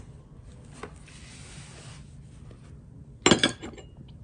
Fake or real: real